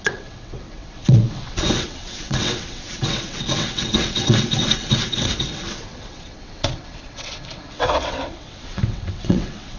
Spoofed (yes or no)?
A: yes